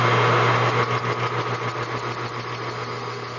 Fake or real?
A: real